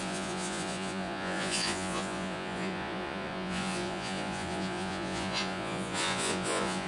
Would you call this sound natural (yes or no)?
no